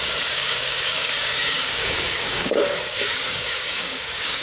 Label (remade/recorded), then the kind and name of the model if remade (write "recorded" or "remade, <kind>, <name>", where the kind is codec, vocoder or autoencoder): remade, codec, DAC